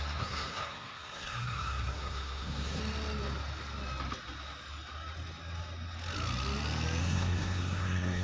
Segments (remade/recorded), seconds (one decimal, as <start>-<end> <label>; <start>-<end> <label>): 0.0-2.8 remade; 2.8-7.0 recorded; 7.0-8.2 remade